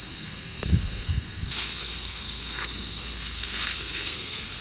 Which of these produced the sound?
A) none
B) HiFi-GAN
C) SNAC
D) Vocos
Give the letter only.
C